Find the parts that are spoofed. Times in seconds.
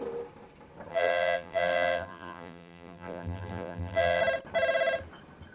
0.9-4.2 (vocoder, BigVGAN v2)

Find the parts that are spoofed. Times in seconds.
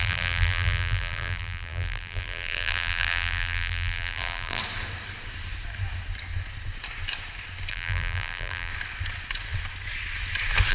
0.0-4.6 (vocoder, BigVGAN v2); 7.7-8.7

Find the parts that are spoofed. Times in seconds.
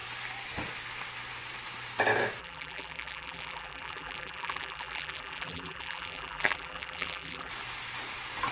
2.4-7.5 (vocoder, BigVGAN v2)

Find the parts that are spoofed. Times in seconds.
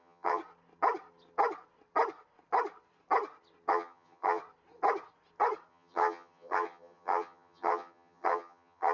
0.0-0.4 (vocoder, HiFi-GAN); 3.7-4.4; 5.7-8.9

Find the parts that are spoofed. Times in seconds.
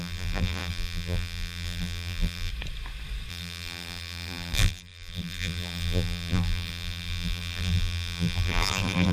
0.0-2.5 (vocoder, BigVGAN v2); 3.3-9.1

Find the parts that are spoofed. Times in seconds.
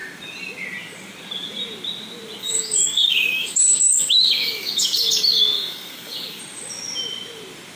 2.4-6.4 (codec, DAC)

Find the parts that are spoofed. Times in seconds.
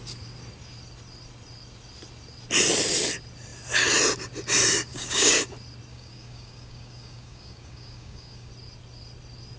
4.9-5.4 (codec, DAC); 5.9-8.5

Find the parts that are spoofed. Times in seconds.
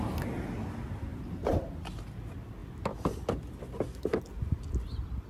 none